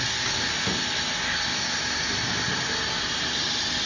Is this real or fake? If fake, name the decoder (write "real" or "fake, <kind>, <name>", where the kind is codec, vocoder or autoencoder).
real